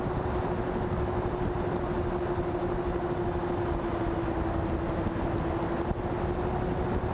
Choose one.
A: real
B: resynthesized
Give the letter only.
A